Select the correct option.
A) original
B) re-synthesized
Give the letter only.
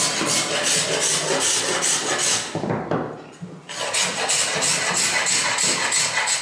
A